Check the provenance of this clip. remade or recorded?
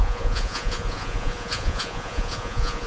remade